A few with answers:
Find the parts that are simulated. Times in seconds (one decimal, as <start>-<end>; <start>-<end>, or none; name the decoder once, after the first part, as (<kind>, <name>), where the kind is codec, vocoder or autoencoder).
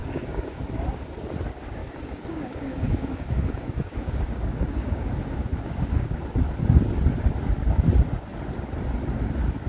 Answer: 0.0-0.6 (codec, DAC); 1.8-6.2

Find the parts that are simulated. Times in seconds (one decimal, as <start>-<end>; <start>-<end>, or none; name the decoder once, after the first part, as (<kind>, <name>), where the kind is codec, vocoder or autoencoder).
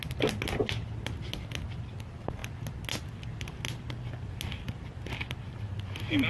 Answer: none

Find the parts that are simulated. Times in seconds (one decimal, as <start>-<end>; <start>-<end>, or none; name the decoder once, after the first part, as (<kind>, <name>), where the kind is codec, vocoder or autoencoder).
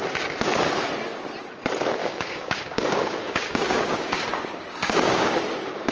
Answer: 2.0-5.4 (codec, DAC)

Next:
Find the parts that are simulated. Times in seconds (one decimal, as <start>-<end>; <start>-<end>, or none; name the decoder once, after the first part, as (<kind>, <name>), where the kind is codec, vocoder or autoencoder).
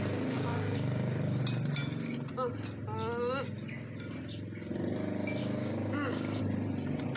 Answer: 0.5-1.4 (codec, DAC); 5.4-6.4